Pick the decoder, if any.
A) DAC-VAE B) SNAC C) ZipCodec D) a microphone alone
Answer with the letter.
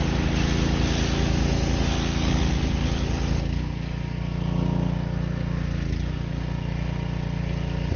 D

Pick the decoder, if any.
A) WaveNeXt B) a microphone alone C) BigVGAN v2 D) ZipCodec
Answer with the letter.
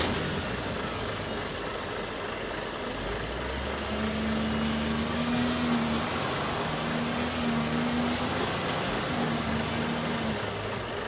B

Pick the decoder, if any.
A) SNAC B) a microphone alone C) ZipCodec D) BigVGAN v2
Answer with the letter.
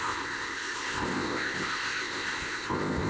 C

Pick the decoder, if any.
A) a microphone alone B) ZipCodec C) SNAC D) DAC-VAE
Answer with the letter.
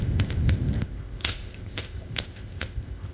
B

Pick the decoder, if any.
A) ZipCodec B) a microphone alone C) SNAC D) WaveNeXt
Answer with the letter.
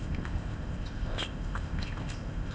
A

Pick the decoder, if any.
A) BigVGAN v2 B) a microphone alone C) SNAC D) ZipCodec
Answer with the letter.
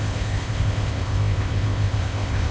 D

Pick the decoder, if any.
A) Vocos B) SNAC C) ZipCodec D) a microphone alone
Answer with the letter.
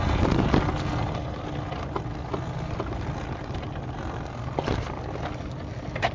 D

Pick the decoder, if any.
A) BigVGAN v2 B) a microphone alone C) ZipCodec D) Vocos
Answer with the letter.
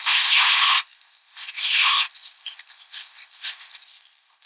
C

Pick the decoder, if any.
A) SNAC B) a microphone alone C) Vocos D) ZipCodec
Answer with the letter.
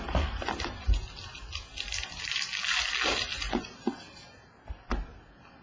B